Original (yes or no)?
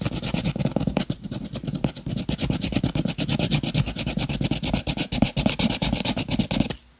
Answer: yes